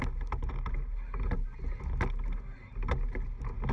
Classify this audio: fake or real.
real